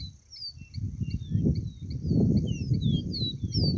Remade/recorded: recorded